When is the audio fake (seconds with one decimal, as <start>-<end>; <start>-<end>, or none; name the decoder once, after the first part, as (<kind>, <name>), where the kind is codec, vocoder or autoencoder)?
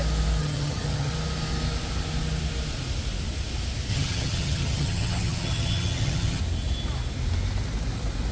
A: 0.4-1.1 (vocoder, HiFi-GAN); 3.9-6.4